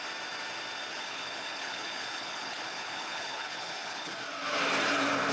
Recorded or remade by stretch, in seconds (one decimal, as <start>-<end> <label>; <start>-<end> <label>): 0.0-0.9 recorded; 0.9-4.1 remade; 4.1-5.3 recorded